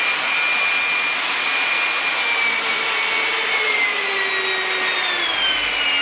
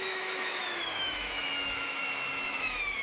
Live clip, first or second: first